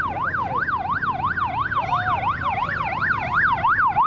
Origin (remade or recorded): recorded